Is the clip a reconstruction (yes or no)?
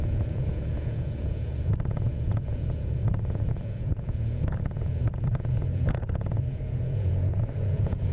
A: yes